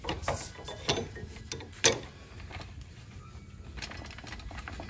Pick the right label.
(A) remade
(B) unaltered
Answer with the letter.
B